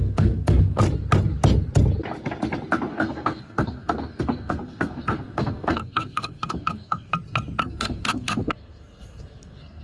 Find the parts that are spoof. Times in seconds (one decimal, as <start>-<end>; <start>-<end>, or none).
0.0-0.8; 2.9-7.1; 7.6-9.8